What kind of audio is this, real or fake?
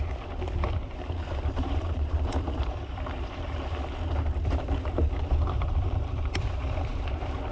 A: fake